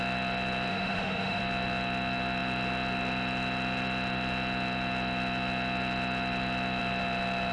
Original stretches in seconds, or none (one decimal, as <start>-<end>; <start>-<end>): 0.0-0.7; 1.4-7.5